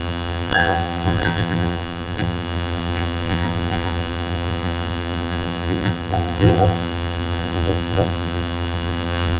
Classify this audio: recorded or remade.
remade